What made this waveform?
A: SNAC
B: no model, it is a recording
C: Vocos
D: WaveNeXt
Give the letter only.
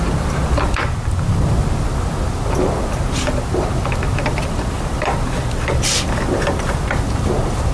B